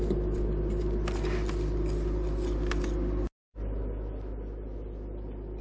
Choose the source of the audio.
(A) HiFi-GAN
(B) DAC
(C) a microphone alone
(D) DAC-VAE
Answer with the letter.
C